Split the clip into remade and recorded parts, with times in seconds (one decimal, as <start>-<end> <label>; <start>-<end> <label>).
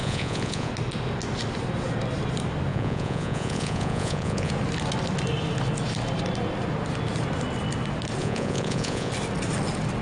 0.0-0.7 remade; 0.7-2.7 recorded; 2.7-4.5 remade; 4.5-8.2 recorded; 8.2-9.1 remade; 9.1-10.0 recorded